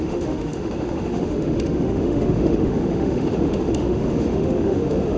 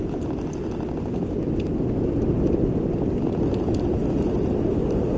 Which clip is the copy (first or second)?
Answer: first